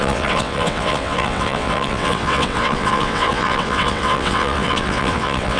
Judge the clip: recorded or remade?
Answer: remade